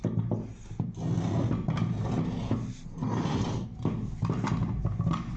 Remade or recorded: recorded